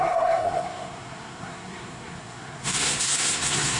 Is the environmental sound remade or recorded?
remade